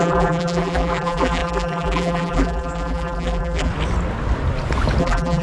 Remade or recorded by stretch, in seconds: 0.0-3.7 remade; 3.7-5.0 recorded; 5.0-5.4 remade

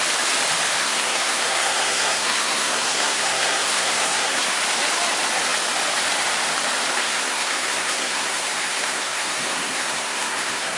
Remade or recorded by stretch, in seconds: 0.0-0.8 recorded; 0.8-4.6 remade; 4.6-7.0 recorded; 7.0-10.8 remade

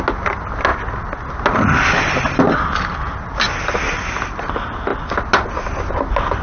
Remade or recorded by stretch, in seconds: 0.0-6.4 recorded

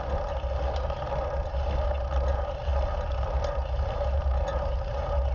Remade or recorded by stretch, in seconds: 0.0-5.3 recorded

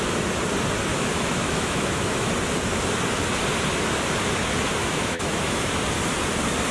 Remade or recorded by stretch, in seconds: 0.0-0.9 recorded; 0.9-2.3 remade; 2.3-4.8 recorded; 4.8-5.7 remade; 5.7-6.7 recorded

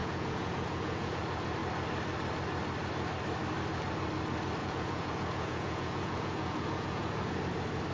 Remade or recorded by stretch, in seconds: 0.0-1.2 remade; 1.2-4.6 recorded; 4.6-7.4 remade; 7.4-7.9 recorded